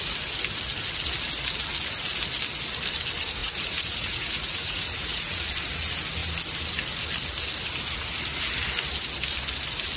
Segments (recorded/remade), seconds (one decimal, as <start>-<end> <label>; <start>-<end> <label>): 0.0-3.4 recorded; 3.4-5.5 remade; 5.5-10.0 recorded